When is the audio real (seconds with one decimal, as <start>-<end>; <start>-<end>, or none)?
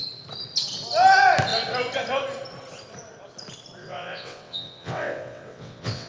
0.0-3.8